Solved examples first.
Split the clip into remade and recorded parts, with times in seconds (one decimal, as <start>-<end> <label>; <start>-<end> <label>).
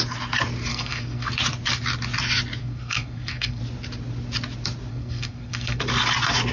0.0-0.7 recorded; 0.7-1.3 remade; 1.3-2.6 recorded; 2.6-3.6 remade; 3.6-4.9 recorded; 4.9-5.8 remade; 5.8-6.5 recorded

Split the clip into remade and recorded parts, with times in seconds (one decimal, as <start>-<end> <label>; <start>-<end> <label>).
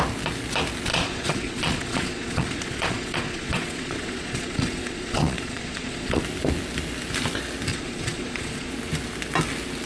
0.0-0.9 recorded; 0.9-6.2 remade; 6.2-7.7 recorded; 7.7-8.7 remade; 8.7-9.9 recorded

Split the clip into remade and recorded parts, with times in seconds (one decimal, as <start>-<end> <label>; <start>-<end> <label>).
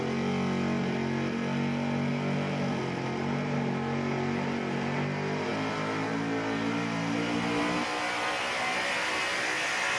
0.0-10.0 recorded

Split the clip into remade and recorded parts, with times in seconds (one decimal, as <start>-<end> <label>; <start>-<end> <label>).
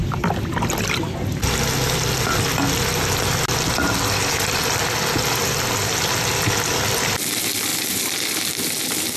0.0-9.2 recorded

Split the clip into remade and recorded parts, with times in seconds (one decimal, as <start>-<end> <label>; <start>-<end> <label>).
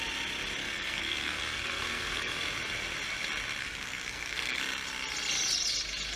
0.0-0.6 recorded; 0.6-2.4 remade; 2.4-3.6 recorded; 3.6-4.6 remade; 4.6-6.2 recorded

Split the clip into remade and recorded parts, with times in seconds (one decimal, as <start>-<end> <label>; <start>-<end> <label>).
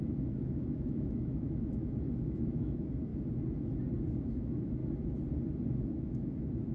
0.0-3.1 remade; 3.1-4.2 recorded; 4.2-4.8 remade; 4.8-5.8 recorded; 5.8-6.7 remade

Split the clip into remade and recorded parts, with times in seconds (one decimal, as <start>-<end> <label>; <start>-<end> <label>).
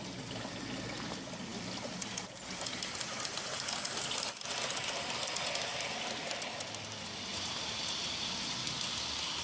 0.0-7.3 recorded; 7.3-8.1 remade; 8.1-9.4 recorded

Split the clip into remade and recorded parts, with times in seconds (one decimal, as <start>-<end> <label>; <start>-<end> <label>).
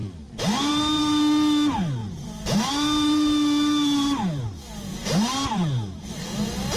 0.0-2.0 recorded; 2.0-2.7 remade; 2.7-4.9 recorded; 4.9-6.0 remade; 6.0-6.8 recorded